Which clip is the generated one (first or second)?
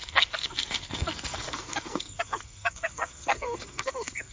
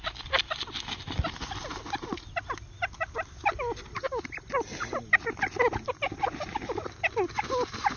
first